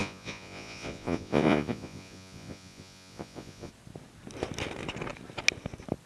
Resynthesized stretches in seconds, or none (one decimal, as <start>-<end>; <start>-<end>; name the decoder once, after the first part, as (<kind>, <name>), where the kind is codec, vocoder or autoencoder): 0.0-3.7 (vocoder, Vocos)